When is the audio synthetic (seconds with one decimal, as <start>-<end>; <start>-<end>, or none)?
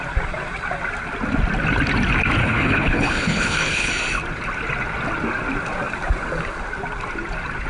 2.4-3.9